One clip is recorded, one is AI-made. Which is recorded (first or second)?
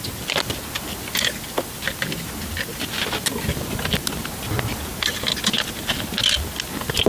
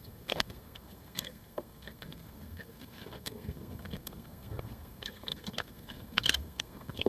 first